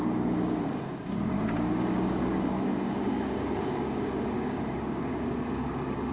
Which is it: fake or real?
fake